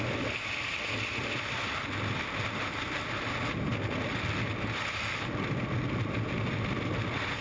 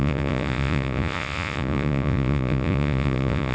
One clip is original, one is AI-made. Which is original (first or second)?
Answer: first